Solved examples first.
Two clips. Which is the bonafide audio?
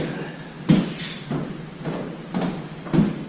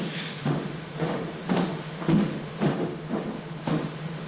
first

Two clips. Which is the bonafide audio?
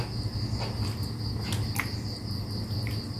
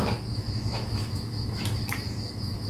first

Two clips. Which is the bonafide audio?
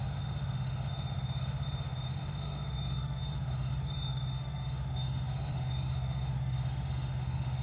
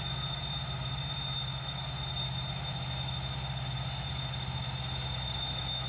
second